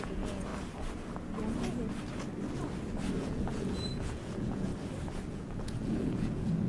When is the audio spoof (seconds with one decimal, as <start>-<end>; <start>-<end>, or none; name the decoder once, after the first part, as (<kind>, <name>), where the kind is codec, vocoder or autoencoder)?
0.0-0.5 (vocoder, Vocos); 3.2-4.7; 5.3-6.7